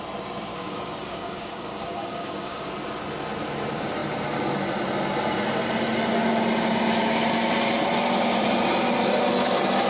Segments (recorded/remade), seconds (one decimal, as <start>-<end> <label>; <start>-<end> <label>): 0.0-0.5 recorded; 0.5-2.7 remade; 2.7-9.9 recorded